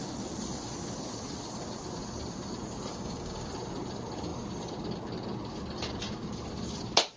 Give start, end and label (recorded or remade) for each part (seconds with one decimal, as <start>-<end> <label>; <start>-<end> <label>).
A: 0.0-2.9 recorded; 2.9-3.5 remade; 3.5-7.2 recorded